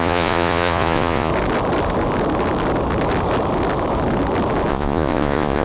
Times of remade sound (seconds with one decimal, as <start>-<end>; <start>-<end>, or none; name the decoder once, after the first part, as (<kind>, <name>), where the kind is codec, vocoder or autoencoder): 0.0-1.3 (vocoder, Vocos); 4.7-5.6